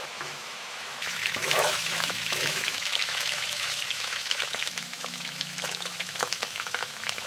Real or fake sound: fake